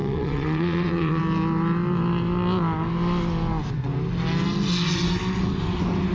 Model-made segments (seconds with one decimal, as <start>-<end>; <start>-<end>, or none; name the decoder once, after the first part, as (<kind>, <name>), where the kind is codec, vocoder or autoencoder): 0.0-1.2 (vocoder, WaveNeXt)